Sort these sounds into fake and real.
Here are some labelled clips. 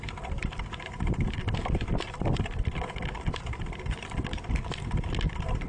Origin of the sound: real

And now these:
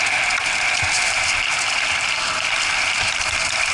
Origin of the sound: real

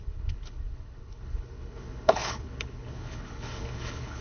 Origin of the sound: fake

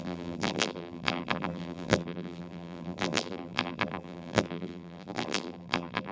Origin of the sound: fake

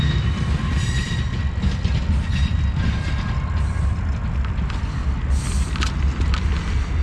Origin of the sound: real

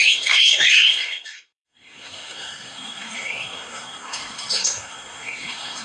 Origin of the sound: fake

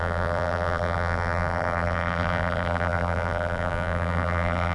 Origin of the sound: fake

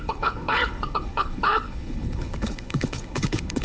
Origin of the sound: fake